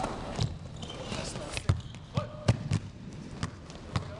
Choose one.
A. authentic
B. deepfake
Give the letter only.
A